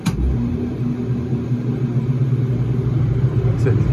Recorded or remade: remade